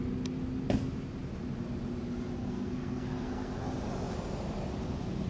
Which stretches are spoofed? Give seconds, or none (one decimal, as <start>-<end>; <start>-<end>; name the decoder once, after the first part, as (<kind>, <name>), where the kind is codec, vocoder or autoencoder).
2.4-3.6 (codec, SNAC)